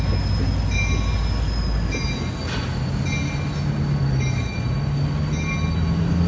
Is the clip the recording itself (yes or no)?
yes